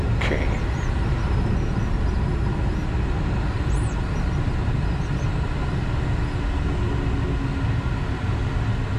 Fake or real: real